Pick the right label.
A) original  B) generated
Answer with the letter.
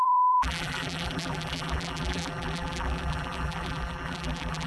B